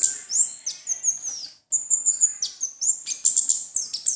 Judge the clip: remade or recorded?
recorded